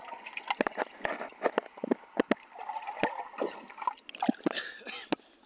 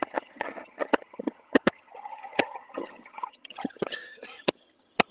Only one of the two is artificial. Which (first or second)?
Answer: second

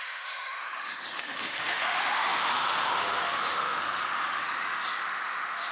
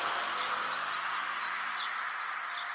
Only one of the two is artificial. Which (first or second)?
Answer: first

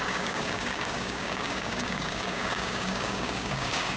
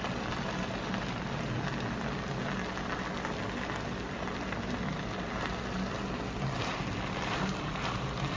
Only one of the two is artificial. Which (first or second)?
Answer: first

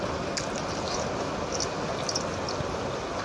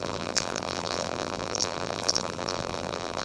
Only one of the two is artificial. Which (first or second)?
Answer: second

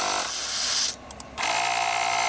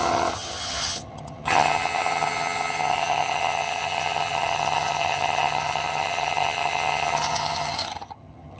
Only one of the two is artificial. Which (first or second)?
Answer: second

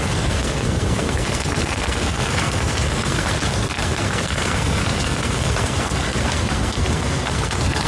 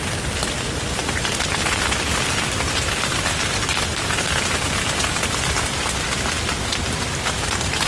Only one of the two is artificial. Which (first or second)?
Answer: first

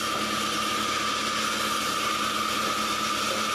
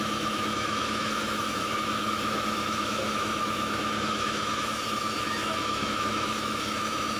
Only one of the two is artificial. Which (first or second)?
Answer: second